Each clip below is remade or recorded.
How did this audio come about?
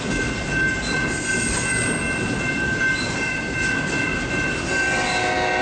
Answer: recorded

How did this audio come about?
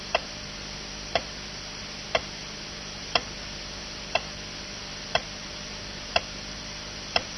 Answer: remade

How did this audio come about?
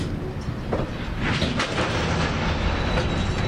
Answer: recorded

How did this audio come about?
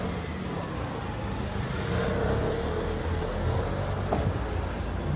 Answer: recorded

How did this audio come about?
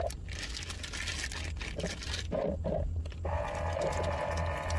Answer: recorded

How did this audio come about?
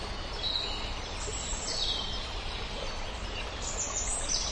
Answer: recorded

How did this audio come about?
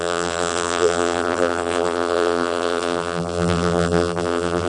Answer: remade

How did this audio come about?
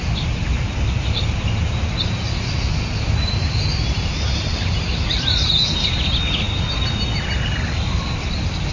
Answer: recorded